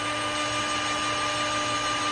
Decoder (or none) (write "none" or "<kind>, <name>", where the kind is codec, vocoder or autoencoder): none